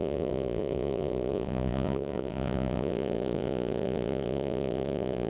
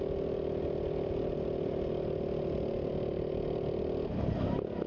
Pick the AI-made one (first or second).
first